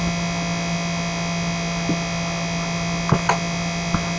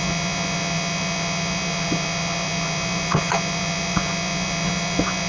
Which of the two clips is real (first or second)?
first